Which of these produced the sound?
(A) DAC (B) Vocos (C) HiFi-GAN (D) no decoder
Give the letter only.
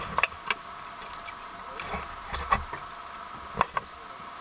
D